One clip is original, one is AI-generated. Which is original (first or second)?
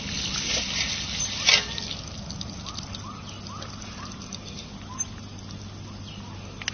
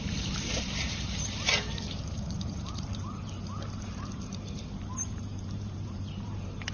first